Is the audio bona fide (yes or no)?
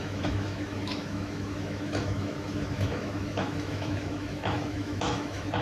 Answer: no